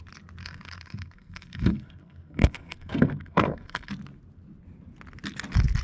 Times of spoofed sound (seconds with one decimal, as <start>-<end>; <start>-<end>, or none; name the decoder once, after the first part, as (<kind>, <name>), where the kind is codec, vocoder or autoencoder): 0.4-3.9 (codec, SNAC)

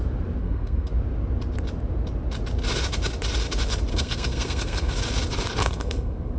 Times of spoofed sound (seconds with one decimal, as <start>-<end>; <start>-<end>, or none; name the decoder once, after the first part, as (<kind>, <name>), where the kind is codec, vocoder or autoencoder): 0.4-0.9 (codec, SNAC); 3.9-4.9; 5.6-6.4

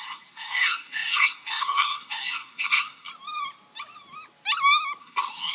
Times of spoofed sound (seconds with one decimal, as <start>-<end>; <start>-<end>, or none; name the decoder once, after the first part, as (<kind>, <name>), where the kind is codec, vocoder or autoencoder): 0.0-3.1 (codec, SNAC); 5.0-5.5

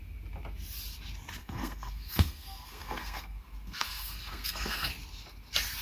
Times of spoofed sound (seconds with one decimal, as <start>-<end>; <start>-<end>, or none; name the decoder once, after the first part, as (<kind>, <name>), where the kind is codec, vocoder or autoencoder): 1.4-4.9 (codec, SNAC)

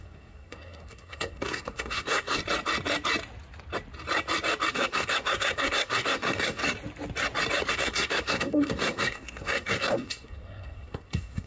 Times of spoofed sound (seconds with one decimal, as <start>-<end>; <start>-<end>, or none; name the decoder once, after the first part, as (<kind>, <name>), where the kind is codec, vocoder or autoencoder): 0.0-2.4 (codec, SNAC); 4.7-6.6; 7.7-11.5